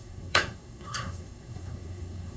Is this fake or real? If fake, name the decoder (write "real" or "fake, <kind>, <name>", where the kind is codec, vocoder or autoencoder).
fake, codec, SNAC